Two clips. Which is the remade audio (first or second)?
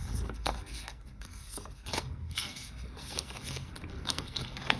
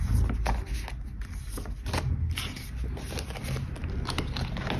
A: first